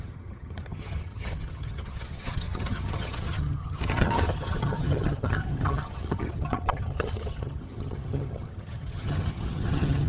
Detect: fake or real fake